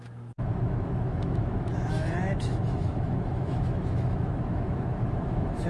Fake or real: fake